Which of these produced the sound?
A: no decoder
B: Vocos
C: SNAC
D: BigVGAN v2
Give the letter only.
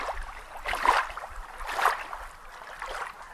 A